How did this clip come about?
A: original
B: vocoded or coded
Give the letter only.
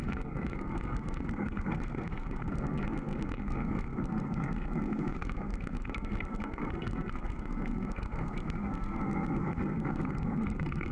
B